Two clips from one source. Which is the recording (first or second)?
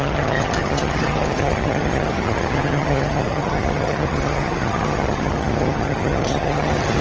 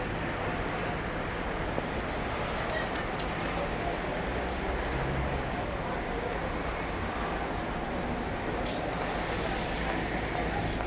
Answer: second